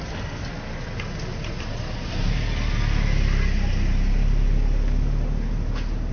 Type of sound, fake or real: real